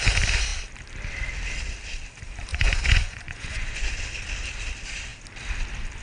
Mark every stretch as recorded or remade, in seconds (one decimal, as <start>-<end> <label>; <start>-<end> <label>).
0.0-2.5 recorded; 2.5-3.9 remade; 3.9-6.0 recorded